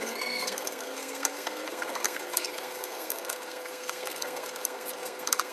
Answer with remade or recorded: remade